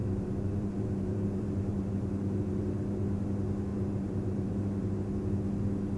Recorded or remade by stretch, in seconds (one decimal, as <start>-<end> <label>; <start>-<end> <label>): 0.0-2.7 remade; 2.7-3.7 recorded; 3.7-4.9 remade; 4.9-6.0 recorded